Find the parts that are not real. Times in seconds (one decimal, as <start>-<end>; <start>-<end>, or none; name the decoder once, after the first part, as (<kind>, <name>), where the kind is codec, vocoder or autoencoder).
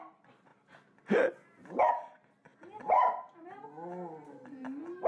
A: 0.0-0.5 (vocoder, BigVGAN v2); 1.9-2.5